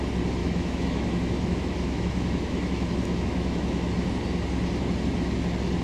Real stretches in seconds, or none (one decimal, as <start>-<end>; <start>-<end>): 0.0-0.4; 3.9-5.8